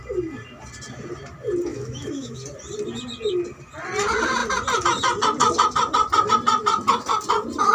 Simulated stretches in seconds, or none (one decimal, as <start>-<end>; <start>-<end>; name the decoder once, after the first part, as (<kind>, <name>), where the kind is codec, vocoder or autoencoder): 1.7-2.4 (autoencoder, DAC-VAE)